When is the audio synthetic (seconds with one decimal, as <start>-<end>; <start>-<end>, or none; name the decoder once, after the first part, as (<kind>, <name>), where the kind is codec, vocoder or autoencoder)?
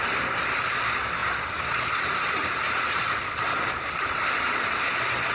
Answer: 1.2-4.4 (vocoder, BigVGAN v2)